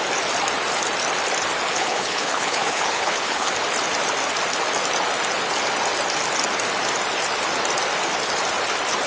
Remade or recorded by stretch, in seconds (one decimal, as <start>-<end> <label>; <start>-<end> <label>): 0.0-1.7 recorded; 1.7-3.5 remade; 3.5-9.1 recorded

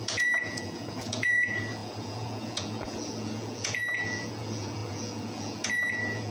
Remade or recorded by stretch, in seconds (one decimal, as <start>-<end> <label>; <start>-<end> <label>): 0.0-6.3 remade

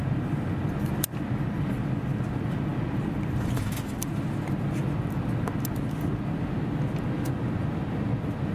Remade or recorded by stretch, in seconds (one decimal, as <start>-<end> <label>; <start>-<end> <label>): 0.0-8.5 recorded

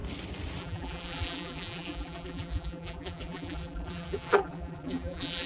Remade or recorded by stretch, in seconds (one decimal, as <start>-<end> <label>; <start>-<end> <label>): 0.0-0.6 recorded; 0.6-5.5 remade

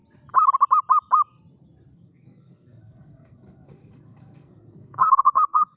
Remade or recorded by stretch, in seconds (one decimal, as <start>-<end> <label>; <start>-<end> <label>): 0.0-1.9 recorded; 1.9-5.8 remade

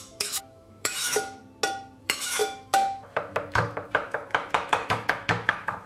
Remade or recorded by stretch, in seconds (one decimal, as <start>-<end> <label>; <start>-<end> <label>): 0.0-1.4 remade; 1.4-2.0 recorded; 2.0-5.9 remade